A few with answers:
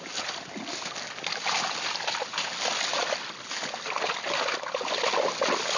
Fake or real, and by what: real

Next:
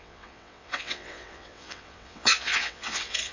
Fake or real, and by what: fake, vocoder, WaveNeXt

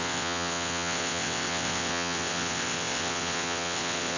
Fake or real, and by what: fake, vocoder, WaveNeXt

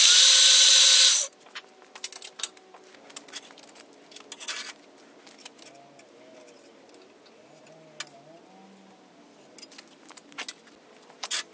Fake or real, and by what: real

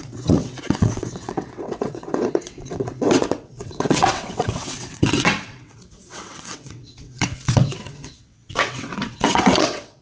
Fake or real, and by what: fake, vocoder, WaveNeXt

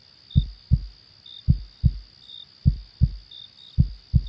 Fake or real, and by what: real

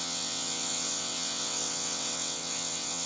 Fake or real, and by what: fake, vocoder, WaveNeXt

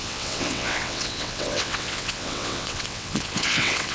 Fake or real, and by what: fake, vocoder, WaveNeXt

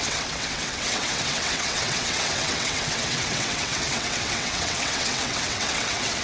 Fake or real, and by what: fake, vocoder, WaveNeXt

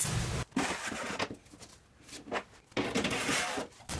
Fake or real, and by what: real